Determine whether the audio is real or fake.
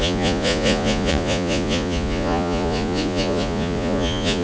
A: fake